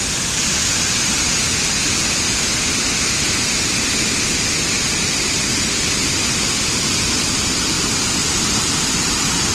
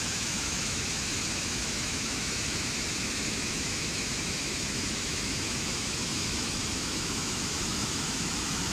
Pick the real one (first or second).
first